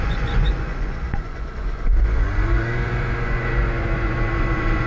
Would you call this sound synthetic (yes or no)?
yes